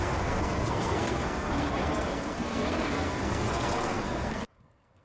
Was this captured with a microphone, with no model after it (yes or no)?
no